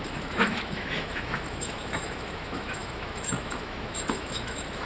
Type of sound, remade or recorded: remade